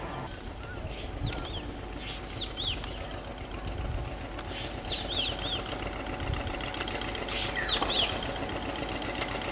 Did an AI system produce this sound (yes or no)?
no